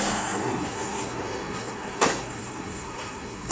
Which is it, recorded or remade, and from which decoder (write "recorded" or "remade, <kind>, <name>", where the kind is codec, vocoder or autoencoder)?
remade, codec, SNAC